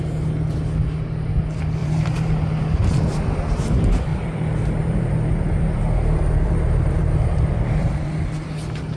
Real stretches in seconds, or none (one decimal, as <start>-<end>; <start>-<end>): 0.0-1.8; 2.3-4.1; 8.1-9.0